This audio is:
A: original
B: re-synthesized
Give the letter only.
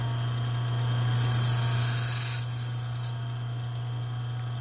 A